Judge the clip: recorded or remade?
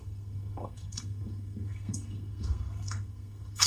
remade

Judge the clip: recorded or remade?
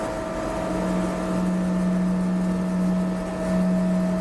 recorded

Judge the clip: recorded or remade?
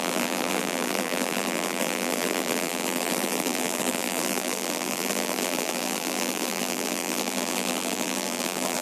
remade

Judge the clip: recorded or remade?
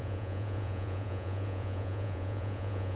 remade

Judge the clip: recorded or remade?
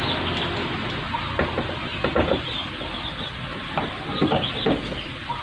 recorded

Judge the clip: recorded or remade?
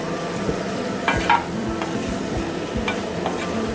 remade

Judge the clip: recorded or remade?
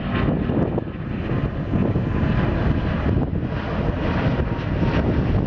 recorded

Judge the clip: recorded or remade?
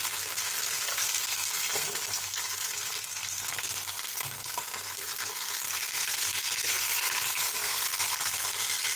remade